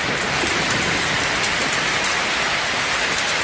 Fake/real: real